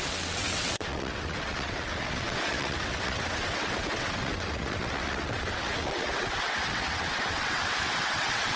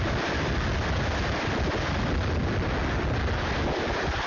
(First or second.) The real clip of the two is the second